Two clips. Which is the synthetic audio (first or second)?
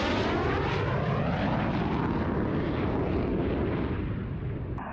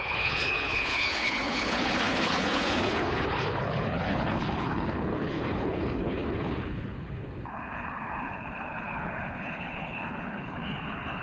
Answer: second